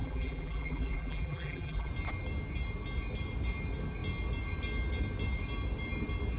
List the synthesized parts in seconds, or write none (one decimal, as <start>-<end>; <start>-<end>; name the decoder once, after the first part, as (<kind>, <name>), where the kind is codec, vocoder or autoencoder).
0.0-1.9 (vocoder, BigVGAN v2)